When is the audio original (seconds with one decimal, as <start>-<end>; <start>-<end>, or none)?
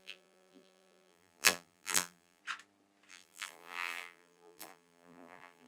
2.4-3.1